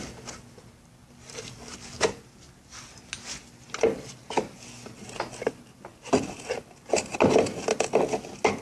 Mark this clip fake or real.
real